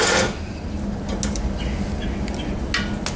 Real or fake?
real